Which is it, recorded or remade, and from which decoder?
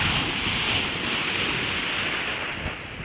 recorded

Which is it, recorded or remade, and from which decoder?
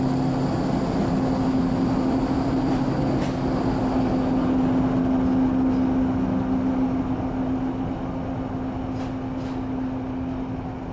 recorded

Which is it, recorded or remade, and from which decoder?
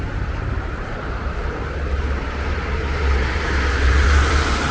remade, vocoder, BigVGAN v2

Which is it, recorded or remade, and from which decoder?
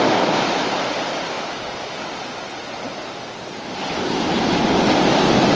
recorded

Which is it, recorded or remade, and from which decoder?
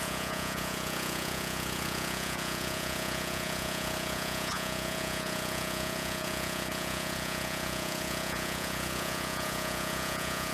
remade, vocoder, Vocos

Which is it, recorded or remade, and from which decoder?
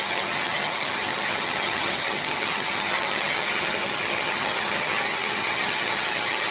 remade, vocoder, HiFi-GAN